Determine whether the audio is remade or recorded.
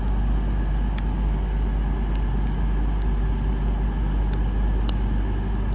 recorded